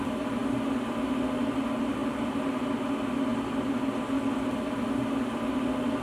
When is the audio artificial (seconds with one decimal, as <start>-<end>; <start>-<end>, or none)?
none